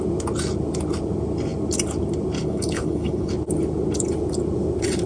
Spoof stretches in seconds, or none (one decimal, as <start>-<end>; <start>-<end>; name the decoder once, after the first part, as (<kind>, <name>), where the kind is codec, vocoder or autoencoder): 2.4-3.3 (codec, HILCodec)